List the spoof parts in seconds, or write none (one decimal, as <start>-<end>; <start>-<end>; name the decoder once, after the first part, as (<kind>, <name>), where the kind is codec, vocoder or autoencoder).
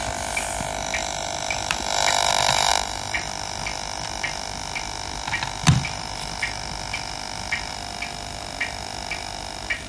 1.4-2.1 (vocoder, BigVGAN v2); 2.7-7.7